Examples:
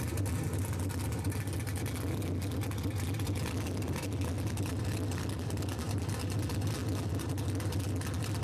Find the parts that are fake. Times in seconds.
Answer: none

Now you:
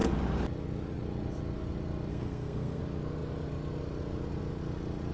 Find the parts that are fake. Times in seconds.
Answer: 2.1-2.8

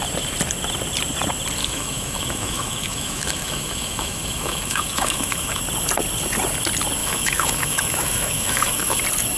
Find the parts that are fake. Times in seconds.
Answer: 1.6-5.6; 7.0-9.0

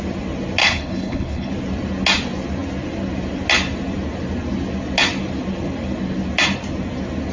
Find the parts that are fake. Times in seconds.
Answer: 0.6-1.5

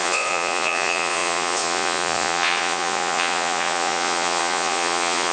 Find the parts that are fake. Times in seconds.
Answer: 0.0-5.3

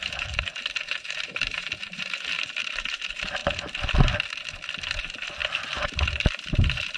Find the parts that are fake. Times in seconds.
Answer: 0.0-3.4; 5.0-7.0